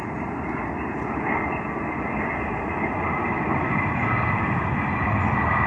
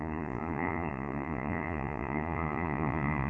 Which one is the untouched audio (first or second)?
first